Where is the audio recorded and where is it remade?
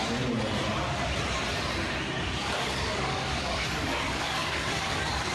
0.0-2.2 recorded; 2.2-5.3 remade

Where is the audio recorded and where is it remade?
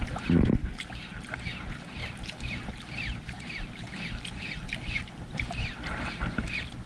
0.0-6.9 recorded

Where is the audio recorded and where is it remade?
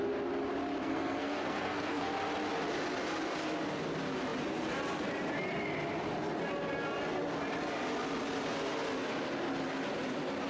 0.0-0.8 recorded; 0.8-2.1 remade; 2.1-10.5 recorded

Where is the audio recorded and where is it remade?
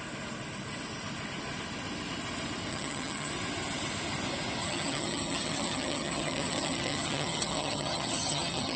0.0-2.7 recorded; 2.7-3.3 remade; 3.3-4.6 recorded; 4.6-8.8 remade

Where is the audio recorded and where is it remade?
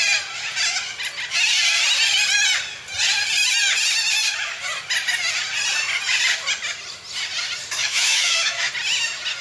0.0-7.8 recorded; 7.8-8.7 remade; 8.7-9.4 recorded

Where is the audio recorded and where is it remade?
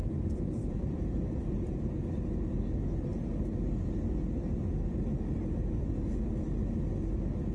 0.0-1.9 remade; 1.9-7.5 recorded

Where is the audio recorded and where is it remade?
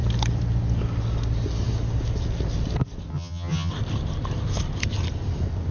0.0-3.1 recorded; 3.1-3.7 remade; 3.7-5.7 recorded